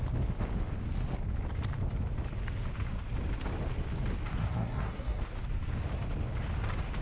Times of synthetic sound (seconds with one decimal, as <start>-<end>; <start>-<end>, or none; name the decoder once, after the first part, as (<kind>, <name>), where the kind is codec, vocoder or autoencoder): 4.4-5.2 (codec, SNAC)